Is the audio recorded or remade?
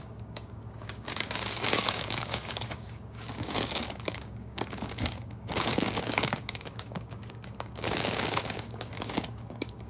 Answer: remade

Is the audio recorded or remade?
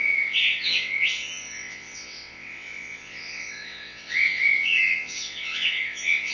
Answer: remade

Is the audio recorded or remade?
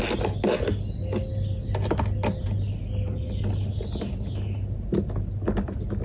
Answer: recorded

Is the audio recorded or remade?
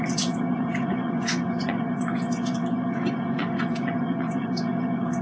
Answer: remade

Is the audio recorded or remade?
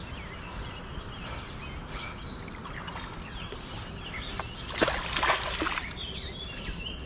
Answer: recorded